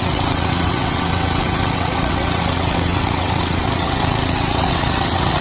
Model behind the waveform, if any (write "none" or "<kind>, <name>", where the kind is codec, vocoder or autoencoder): vocoder, WaveNeXt